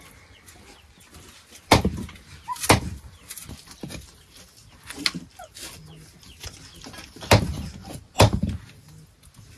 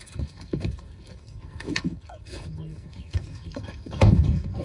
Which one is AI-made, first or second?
second